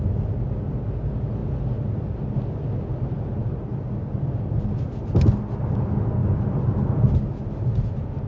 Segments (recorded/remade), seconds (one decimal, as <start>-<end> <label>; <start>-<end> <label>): 0.0-8.3 recorded